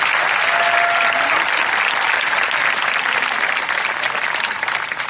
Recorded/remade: recorded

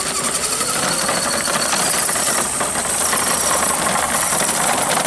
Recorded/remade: recorded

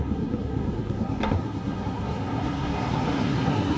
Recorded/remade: remade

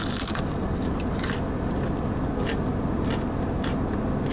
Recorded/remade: recorded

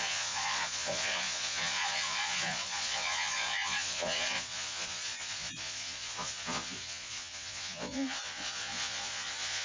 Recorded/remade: remade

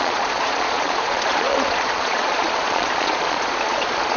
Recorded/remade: remade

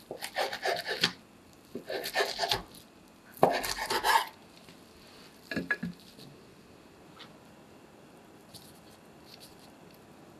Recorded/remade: recorded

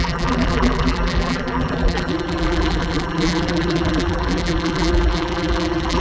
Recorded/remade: remade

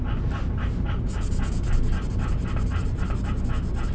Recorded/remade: recorded